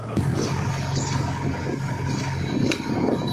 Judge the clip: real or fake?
fake